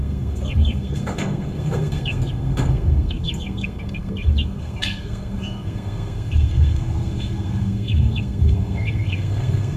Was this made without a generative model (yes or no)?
no